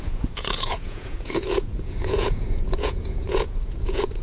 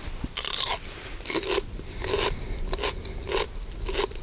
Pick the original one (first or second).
second